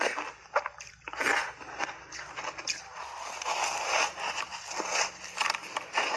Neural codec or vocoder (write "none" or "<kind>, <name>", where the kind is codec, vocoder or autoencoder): none